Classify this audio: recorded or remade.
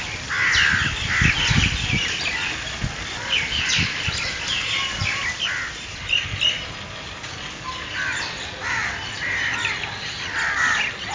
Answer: recorded